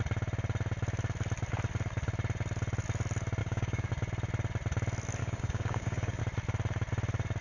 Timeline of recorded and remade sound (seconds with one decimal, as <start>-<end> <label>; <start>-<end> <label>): 0.0-3.4 recorded; 3.4-3.9 remade; 3.9-5.2 recorded; 5.2-6.2 remade; 6.2-7.4 recorded